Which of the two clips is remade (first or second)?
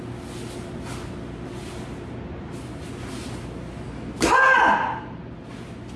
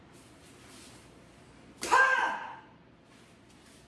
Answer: second